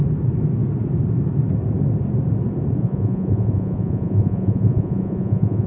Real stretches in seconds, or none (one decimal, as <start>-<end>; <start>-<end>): 0.0-2.8